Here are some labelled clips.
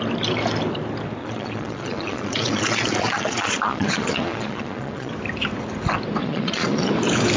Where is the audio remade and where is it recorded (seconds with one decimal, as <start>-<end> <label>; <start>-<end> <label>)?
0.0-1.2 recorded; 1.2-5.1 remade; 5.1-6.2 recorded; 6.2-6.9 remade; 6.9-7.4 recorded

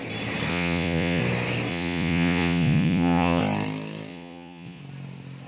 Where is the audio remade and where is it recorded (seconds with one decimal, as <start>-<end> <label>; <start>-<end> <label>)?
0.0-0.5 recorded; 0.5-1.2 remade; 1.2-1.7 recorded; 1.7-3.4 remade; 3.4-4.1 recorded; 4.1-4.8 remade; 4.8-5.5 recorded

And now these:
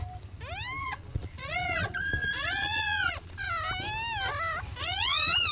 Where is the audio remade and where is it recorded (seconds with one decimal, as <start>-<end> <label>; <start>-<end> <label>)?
0.0-0.8 recorded; 0.8-3.5 remade; 3.5-4.8 recorded; 4.8-5.5 remade

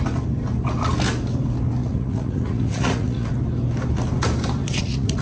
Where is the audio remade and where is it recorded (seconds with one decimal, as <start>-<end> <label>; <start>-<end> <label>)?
0.0-1.8 recorded; 1.8-3.3 remade; 3.3-4.6 recorded; 4.6-5.2 remade